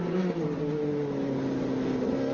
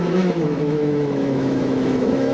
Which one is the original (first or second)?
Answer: first